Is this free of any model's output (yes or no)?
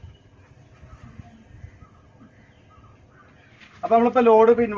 yes